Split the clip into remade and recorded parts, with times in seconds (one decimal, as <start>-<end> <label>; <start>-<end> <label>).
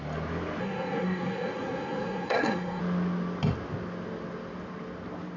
0.0-0.6 recorded; 0.6-2.8 remade; 2.8-5.4 recorded